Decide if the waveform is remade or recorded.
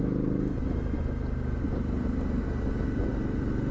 recorded